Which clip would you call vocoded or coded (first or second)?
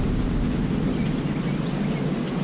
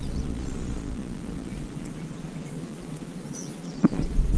second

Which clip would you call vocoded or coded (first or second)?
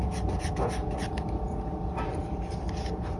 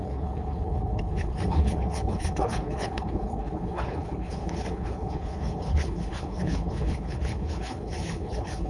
second